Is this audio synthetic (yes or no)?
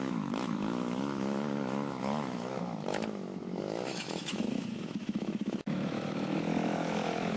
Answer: yes